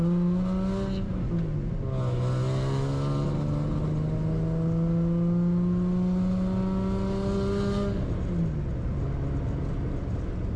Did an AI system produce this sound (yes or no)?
no